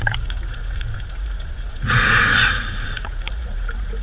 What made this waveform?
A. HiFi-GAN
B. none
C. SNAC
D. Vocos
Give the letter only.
D